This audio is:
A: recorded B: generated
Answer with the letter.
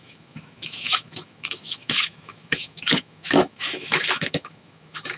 B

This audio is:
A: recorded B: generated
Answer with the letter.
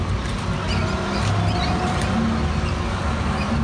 A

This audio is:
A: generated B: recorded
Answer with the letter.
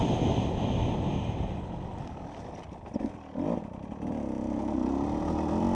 B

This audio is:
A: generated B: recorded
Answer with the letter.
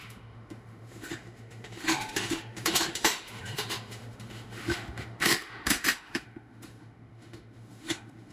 A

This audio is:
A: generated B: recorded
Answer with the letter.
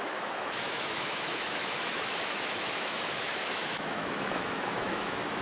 A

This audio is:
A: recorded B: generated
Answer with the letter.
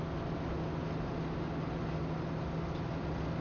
A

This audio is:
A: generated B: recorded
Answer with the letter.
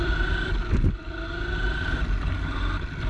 B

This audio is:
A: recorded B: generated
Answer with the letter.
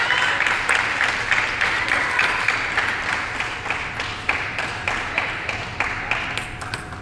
A